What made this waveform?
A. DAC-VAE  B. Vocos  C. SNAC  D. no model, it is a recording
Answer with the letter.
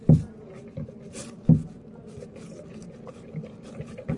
D